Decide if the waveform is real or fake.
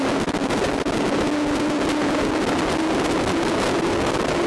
real